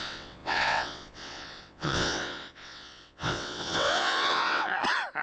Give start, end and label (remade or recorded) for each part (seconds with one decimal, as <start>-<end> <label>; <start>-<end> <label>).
0.0-4.7 remade; 4.7-5.2 recorded